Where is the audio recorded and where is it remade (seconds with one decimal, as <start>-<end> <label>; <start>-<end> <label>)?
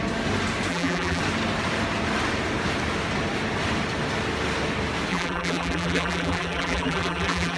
0.0-0.7 recorded; 0.7-1.2 remade; 1.2-5.1 recorded; 5.1-7.6 remade